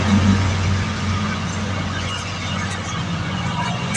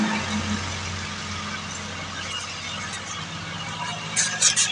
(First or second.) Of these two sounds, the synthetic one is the first